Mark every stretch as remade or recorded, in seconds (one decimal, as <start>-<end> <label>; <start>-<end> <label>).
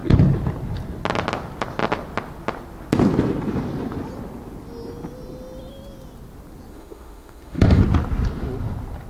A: 0.0-6.7 recorded; 6.7-7.8 remade; 7.8-9.1 recorded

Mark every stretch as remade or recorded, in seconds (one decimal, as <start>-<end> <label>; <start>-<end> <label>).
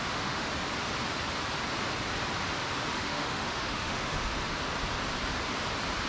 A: 0.0-0.5 remade; 0.5-2.9 recorded; 2.9-4.4 remade; 4.4-6.1 recorded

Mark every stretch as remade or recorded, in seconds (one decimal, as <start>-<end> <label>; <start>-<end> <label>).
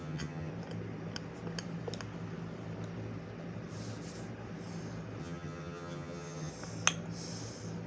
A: 0.0-0.5 remade; 0.5-5.2 recorded; 5.2-6.5 remade; 6.5-7.9 recorded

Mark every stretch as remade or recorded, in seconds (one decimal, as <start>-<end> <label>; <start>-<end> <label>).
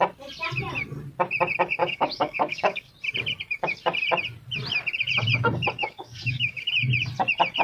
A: 0.0-1.8 recorded; 1.8-2.9 remade; 2.9-5.8 recorded; 5.8-6.7 remade; 6.7-7.6 recorded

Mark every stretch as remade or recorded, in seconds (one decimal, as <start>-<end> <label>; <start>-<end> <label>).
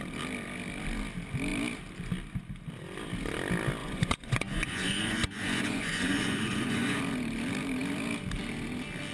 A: 0.0-3.8 recorded; 3.8-7.0 remade; 7.0-9.1 recorded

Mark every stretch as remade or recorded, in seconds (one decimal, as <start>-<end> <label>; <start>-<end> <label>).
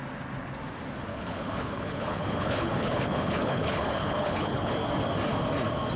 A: 0.0-1.1 recorded; 1.1-4.7 remade; 4.7-6.0 recorded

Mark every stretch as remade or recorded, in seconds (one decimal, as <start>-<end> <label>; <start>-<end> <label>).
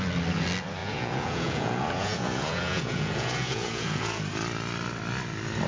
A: 0.0-0.8 recorded; 0.8-4.2 remade; 4.2-5.7 recorded